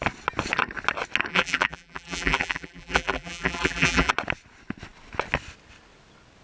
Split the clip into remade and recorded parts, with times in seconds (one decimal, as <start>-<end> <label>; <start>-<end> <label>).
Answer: 0.0-1.3 recorded; 1.3-4.1 remade; 4.1-6.4 recorded